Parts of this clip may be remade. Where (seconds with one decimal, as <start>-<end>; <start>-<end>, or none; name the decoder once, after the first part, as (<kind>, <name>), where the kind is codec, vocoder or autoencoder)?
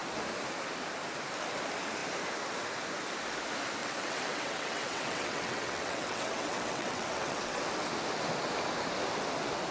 3.8-7.6 (vocoder, WaveNeXt)